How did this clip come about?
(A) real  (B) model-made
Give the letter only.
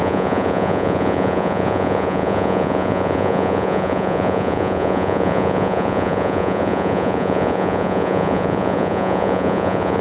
B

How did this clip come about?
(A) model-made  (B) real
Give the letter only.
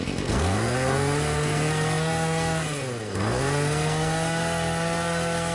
A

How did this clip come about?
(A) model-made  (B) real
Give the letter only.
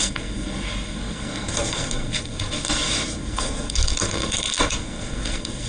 A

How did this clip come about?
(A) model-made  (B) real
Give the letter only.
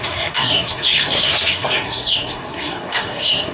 A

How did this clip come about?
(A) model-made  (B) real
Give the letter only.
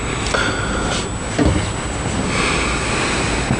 B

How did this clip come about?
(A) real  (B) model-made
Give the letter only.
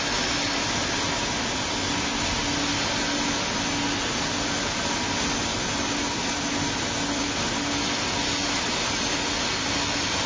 A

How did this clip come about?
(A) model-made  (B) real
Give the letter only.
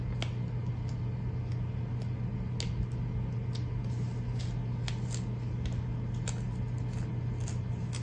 B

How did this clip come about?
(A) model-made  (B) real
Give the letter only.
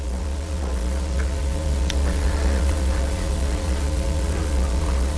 A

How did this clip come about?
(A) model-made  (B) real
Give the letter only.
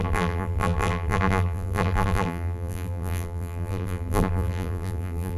A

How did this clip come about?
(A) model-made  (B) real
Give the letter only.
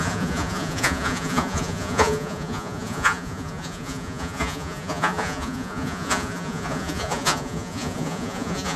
A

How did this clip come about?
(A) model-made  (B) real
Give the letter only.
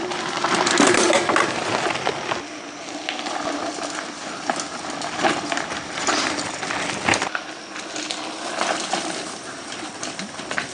B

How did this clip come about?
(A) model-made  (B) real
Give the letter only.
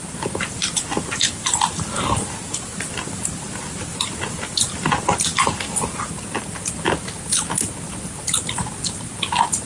B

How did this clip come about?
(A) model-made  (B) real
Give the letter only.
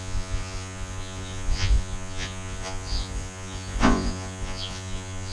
A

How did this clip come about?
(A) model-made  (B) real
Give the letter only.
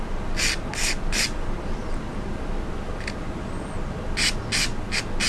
B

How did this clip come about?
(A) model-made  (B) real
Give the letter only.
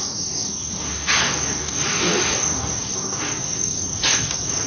A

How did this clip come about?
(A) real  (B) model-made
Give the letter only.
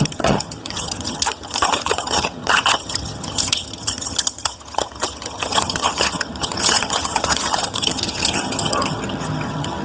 B